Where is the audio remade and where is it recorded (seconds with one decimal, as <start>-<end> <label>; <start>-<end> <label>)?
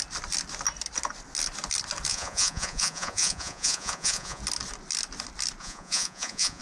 0.0-2.1 recorded; 2.1-4.4 remade; 4.4-5.6 recorded; 5.6-6.6 remade